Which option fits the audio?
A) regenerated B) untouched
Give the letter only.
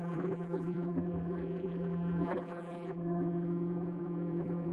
A